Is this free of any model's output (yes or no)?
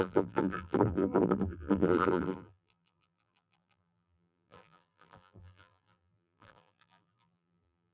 no